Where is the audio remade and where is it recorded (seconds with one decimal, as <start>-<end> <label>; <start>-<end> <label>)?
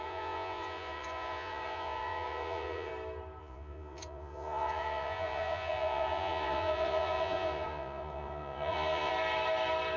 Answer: 0.0-2.9 remade; 2.9-3.4 recorded; 3.4-9.1 remade; 9.1-10.0 recorded